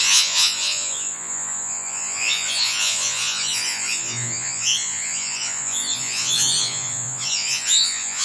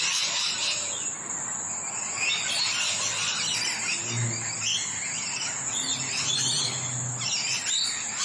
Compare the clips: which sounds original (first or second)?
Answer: second